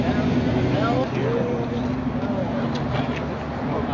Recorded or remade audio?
recorded